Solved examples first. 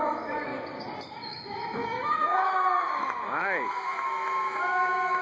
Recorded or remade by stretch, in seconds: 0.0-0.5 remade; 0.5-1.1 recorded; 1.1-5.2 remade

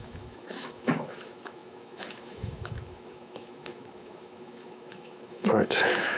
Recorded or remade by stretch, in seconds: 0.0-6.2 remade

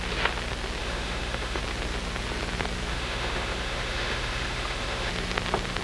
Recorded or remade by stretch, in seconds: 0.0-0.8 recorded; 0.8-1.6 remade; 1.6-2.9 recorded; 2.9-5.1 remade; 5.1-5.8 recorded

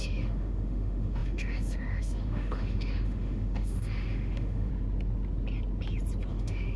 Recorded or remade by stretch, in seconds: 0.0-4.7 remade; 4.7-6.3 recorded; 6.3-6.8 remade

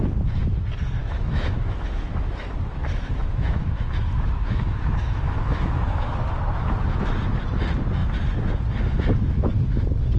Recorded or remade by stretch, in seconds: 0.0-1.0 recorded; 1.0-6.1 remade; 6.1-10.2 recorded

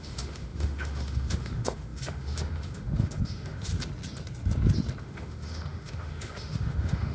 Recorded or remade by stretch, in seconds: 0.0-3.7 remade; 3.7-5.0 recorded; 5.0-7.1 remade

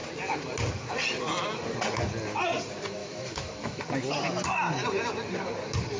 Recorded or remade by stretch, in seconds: 0.0-3.0 recorded; 3.0-3.8 remade; 3.8-6.0 recorded